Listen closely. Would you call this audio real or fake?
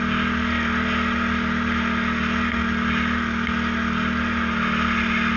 real